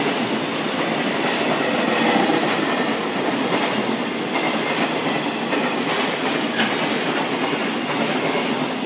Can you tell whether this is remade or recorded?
recorded